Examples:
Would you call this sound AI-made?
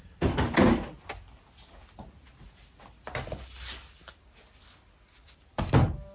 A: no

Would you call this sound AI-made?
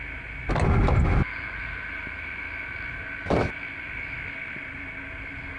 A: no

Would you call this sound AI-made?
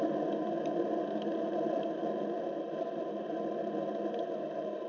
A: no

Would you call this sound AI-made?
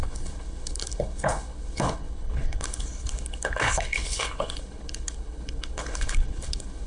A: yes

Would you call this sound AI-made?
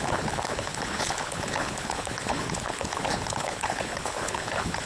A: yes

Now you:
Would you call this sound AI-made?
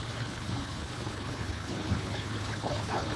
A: yes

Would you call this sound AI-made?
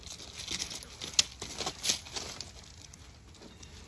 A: no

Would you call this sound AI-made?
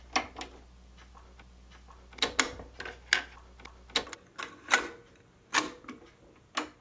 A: no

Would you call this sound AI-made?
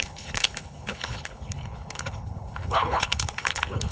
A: yes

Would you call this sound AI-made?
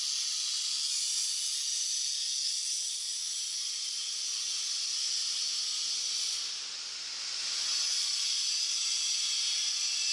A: no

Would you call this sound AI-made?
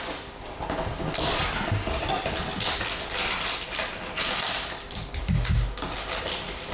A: no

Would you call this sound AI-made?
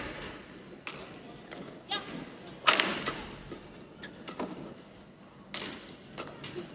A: no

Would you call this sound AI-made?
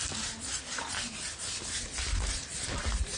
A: no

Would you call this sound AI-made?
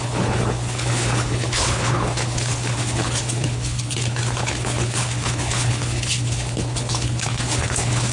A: yes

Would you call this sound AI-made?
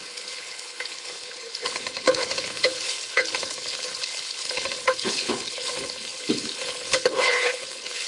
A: yes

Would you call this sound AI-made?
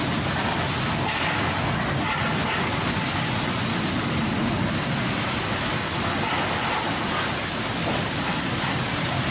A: no